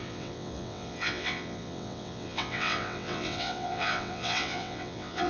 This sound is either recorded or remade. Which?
remade